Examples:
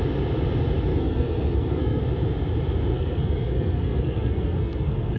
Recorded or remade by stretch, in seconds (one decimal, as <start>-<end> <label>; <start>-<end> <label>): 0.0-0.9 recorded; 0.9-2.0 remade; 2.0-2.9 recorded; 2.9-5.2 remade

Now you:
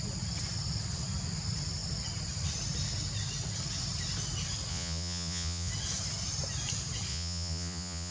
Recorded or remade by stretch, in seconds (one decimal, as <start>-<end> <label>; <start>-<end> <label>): 0.0-4.7 recorded; 4.7-5.7 remade; 5.7-7.1 recorded; 7.1-8.1 remade

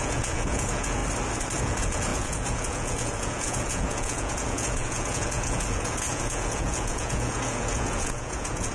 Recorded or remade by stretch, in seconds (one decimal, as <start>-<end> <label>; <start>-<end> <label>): 0.0-1.0 remade; 1.0-1.6 recorded; 1.6-8.7 remade